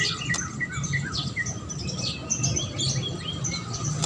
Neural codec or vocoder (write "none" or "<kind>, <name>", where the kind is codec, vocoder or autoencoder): none